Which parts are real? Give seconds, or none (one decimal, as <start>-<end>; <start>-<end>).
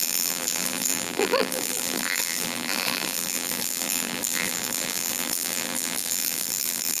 none